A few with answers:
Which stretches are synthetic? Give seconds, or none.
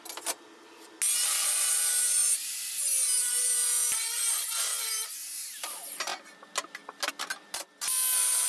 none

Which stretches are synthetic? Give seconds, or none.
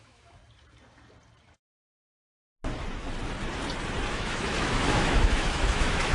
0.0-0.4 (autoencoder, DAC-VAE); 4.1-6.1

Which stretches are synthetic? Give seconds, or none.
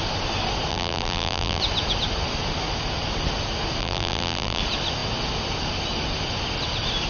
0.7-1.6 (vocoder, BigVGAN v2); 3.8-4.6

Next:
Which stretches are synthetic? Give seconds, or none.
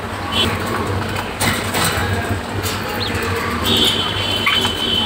none